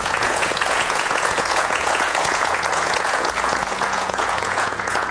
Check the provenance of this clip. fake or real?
fake